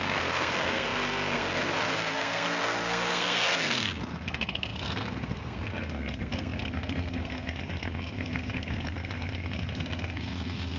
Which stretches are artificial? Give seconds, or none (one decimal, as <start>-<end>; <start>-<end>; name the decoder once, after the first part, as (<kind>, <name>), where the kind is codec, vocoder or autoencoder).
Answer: 0.0-10.8 (codec, SNAC)